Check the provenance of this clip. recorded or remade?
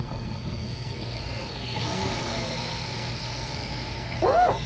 remade